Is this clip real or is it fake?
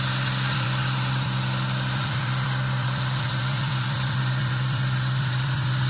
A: fake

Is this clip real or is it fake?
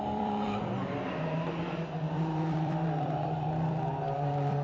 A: fake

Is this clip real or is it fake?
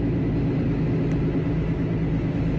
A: real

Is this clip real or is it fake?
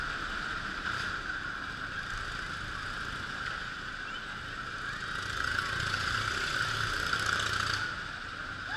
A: real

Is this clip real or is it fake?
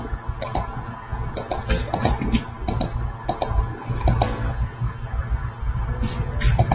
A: real